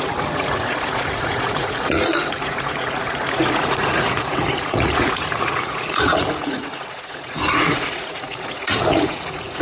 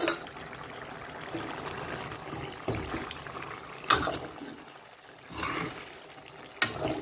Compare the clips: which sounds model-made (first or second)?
first